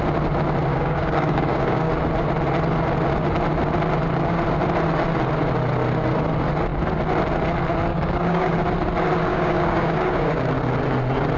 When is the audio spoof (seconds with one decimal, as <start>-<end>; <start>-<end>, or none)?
0.7-1.9; 7.9-8.6; 9.3-10.5